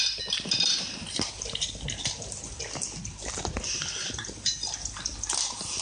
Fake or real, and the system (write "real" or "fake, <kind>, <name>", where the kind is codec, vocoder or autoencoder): fake, vocoder, BigVGAN v2